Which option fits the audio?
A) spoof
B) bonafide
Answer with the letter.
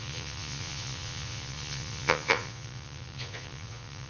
A